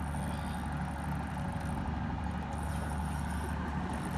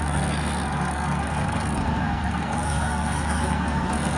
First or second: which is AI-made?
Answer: second